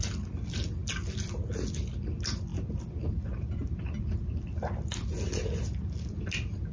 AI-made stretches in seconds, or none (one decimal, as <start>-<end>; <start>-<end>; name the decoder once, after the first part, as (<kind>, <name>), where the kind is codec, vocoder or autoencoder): none